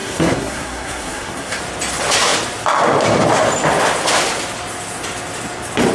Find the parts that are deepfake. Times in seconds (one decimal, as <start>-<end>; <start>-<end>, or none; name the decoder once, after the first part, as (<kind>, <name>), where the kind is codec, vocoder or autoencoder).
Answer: 0.0-1.6 (codec, SNAC)